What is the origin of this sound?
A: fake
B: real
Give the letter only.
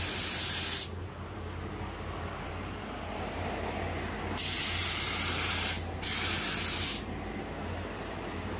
B